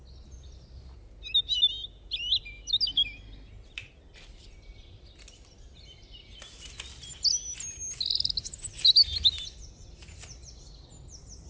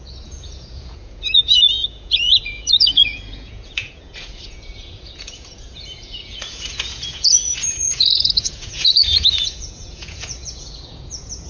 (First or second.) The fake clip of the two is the second